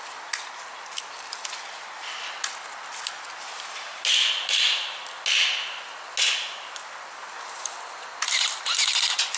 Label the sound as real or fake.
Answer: real